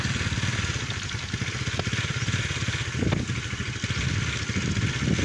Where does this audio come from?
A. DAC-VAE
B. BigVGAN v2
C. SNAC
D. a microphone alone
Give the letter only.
D